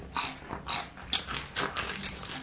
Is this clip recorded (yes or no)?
yes